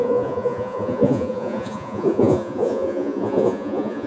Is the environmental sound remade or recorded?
remade